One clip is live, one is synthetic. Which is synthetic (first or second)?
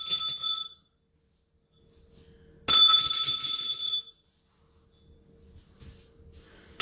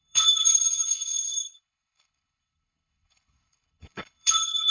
second